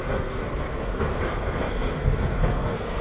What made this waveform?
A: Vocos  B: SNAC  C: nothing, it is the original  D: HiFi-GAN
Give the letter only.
B